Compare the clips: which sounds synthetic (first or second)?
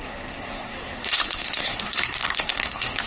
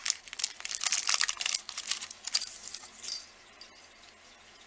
first